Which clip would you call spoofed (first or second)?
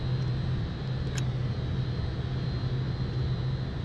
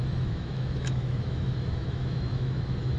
second